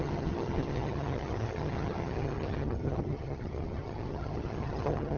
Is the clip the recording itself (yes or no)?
no